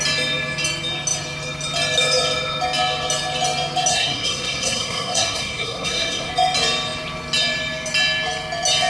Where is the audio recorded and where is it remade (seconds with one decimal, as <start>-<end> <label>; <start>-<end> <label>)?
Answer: 0.0-3.9 recorded; 3.9-6.3 remade; 6.3-8.9 recorded